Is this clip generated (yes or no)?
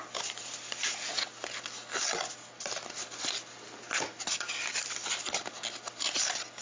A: no